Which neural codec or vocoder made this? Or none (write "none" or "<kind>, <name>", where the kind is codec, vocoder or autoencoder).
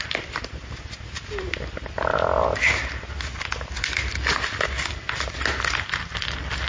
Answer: none